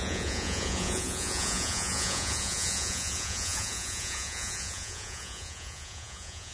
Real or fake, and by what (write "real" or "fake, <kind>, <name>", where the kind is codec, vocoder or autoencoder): fake, vocoder, Vocos